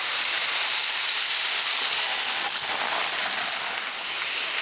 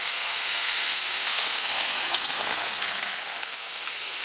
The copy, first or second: second